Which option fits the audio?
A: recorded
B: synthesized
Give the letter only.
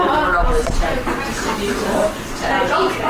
A